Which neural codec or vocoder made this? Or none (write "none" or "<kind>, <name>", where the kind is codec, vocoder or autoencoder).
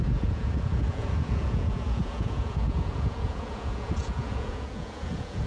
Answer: vocoder, Vocos